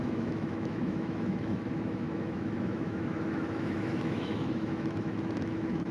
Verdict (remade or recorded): remade